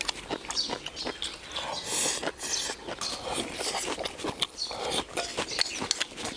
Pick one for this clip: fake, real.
real